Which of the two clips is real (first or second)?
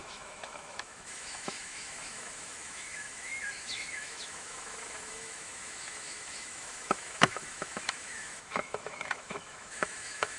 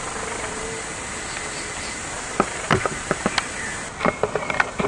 second